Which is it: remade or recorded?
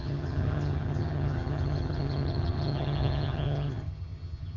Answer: remade